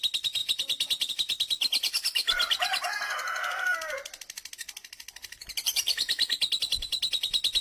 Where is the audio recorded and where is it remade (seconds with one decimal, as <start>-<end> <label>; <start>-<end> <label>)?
0.0-7.6 recorded